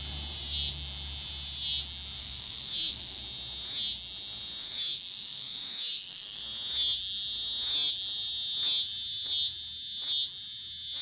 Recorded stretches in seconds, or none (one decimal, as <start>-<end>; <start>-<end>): 0.0-2.2; 3.2-4.6; 6.4-11.0